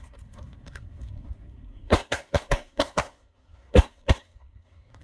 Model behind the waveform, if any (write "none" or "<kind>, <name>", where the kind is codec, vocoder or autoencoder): codec, SNAC